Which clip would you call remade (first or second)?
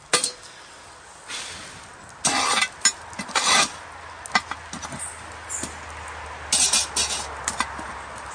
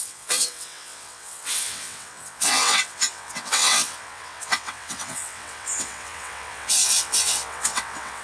second